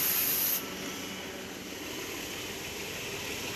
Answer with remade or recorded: recorded